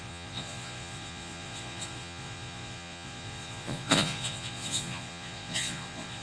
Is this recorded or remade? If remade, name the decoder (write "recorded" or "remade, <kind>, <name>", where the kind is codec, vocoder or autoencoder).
remade, vocoder, Vocos